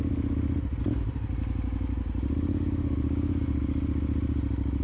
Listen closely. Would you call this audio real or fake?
real